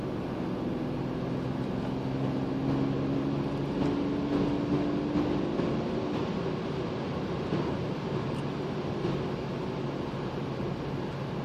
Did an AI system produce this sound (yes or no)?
no